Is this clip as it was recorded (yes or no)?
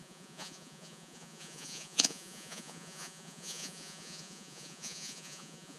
no